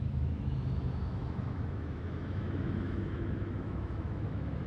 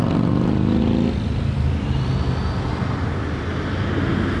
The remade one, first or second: first